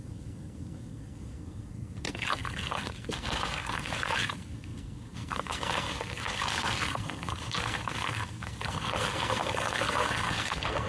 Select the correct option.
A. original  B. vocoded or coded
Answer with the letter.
B